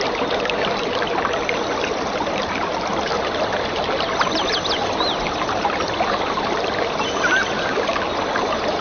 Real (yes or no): yes